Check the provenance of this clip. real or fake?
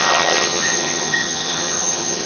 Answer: fake